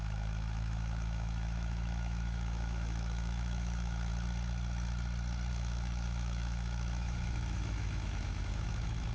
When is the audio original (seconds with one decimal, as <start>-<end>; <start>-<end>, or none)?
4.1-5.5